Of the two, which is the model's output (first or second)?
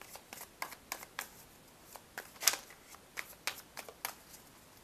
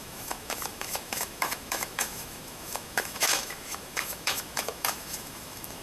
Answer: second